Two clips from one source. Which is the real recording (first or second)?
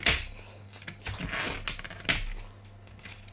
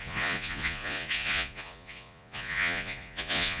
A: first